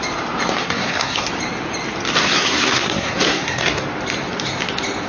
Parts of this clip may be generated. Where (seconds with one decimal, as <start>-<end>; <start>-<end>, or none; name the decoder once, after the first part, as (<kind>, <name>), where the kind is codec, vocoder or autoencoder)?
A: 0.6-1.3 (codec, SNAC); 2.2-3.8